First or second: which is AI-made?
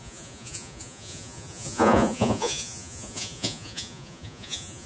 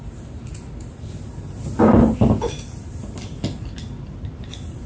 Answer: first